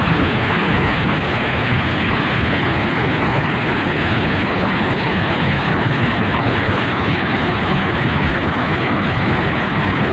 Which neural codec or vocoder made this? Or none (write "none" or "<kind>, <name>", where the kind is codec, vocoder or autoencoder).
codec, HILCodec